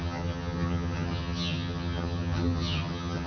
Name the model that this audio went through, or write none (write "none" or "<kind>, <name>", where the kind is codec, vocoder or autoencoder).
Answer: vocoder, HiFi-GAN